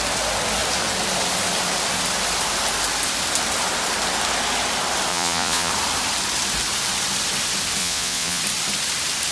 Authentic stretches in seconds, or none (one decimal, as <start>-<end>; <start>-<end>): 0.0-5.1; 5.7-7.8; 8.4-9.3